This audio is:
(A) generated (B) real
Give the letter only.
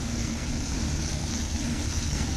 A